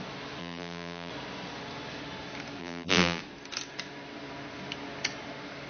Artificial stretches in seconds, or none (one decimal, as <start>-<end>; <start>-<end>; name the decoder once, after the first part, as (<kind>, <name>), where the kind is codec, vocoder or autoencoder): 0.4-1.1 (vocoder, BigVGAN v2); 2.6-3.2